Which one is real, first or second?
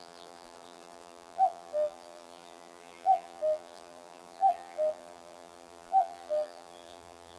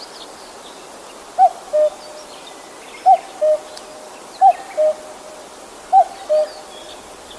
second